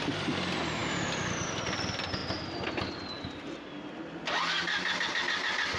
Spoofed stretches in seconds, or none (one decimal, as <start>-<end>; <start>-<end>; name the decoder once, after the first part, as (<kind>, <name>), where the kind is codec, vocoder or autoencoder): none